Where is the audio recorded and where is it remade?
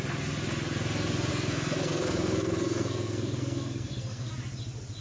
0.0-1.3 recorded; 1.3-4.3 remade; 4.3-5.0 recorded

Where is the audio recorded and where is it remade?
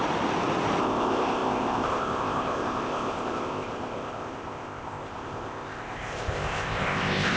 0.0-0.8 recorded; 0.8-7.4 remade